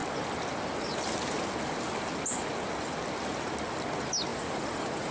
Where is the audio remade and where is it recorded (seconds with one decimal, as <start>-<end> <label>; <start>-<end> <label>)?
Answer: 0.0-4.3 recorded; 4.3-5.1 remade